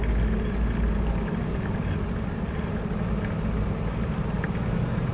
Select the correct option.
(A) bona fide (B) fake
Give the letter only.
A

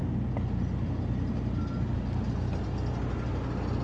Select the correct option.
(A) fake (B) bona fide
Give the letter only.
B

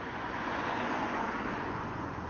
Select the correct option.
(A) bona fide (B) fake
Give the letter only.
B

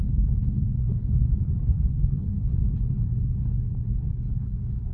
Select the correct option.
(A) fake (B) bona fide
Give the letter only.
A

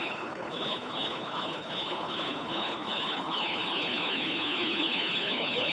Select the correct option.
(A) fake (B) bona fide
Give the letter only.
A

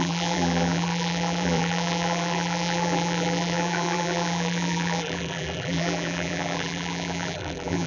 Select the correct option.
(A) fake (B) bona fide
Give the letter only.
A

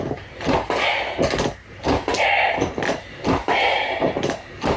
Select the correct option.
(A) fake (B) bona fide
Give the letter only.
B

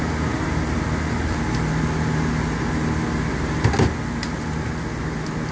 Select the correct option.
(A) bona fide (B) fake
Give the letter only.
A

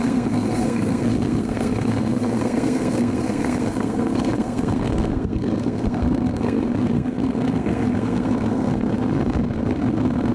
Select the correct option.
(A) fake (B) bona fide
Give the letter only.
A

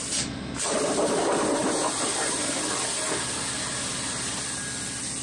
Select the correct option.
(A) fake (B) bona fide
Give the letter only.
B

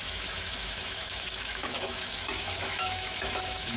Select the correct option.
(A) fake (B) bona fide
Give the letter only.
A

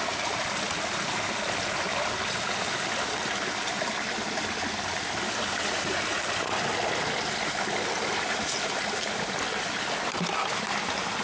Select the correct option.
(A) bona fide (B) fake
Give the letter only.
A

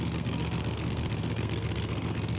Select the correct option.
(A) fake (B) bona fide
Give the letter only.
A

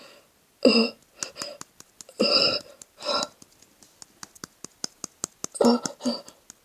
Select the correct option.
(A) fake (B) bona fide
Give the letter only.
B